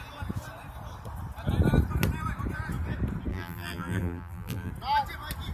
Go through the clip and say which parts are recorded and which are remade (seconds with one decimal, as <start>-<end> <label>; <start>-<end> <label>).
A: 0.0-3.3 recorded; 3.3-4.7 remade; 4.7-5.5 recorded